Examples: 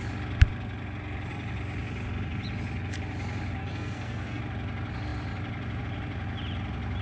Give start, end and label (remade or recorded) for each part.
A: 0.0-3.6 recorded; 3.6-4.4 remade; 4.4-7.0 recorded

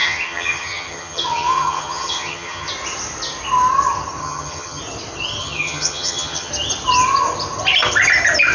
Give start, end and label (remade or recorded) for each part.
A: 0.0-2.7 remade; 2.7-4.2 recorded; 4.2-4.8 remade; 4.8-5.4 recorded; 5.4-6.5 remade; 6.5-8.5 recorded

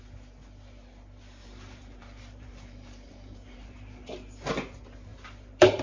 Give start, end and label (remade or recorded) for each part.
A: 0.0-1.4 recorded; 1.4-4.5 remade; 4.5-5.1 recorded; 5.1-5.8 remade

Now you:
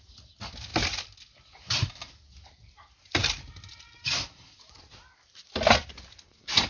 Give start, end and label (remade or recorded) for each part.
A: 0.0-6.7 recorded

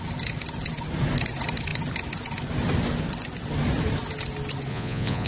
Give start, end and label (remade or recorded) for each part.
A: 0.0-4.7 recorded; 4.7-5.3 remade

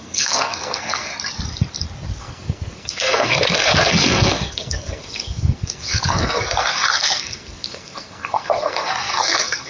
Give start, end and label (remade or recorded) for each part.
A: 0.0-1.1 remade; 1.1-2.2 recorded; 2.2-9.7 remade

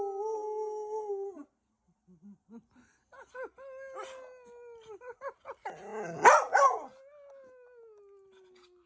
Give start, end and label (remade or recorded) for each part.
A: 0.0-8.9 recorded